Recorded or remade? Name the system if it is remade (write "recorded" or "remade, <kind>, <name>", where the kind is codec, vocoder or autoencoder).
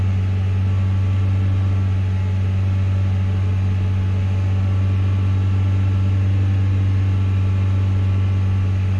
recorded